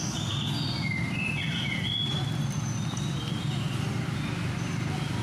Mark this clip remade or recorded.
recorded